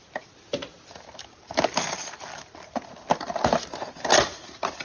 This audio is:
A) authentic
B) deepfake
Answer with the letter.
A